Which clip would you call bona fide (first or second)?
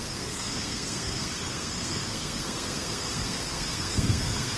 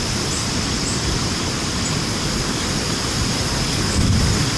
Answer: second